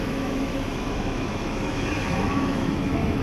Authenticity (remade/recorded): remade